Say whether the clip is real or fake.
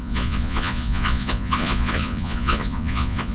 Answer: fake